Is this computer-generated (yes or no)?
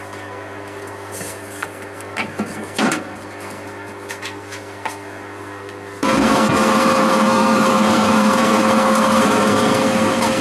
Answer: yes